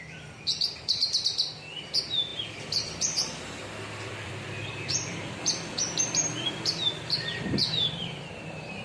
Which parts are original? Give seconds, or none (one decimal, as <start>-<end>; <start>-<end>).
1.0-1.8